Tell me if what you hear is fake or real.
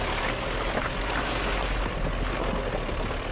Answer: real